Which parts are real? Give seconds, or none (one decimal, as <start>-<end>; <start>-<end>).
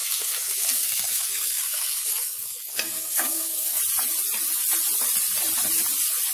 3.8-6.3